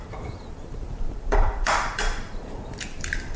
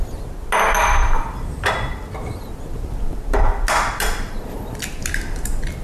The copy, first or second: first